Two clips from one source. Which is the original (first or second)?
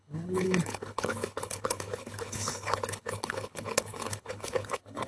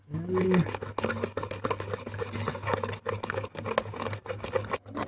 second